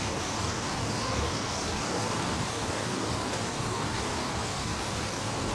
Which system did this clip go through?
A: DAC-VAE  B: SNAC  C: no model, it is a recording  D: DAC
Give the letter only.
D